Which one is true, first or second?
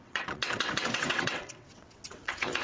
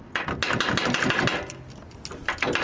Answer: second